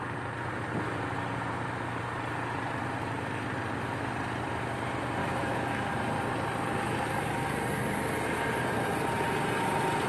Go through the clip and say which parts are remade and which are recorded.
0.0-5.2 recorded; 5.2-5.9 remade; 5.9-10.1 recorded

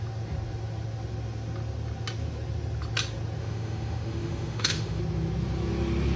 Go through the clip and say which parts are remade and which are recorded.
0.0-3.4 recorded; 3.4-5.0 remade; 5.0-6.2 recorded

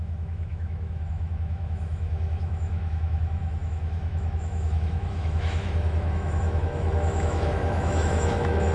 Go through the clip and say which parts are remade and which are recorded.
0.0-8.7 remade

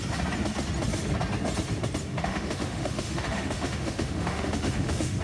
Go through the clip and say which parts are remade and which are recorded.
0.0-2.0 recorded; 2.0-5.2 remade